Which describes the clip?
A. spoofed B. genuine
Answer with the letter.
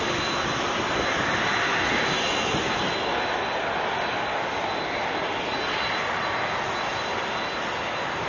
B